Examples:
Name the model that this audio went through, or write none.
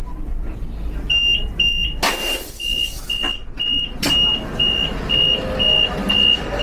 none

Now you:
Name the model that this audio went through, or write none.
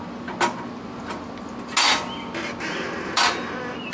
none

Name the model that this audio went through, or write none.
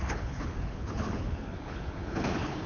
codec, HILCodec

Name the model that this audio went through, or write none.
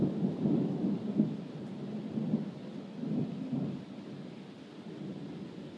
none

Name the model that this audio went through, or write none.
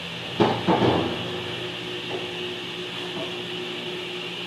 none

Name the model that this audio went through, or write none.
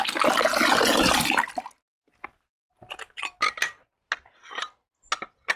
none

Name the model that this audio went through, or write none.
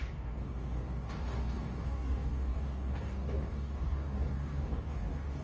codec, DAC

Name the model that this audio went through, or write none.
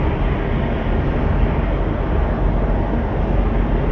none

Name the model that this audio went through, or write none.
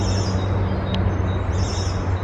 none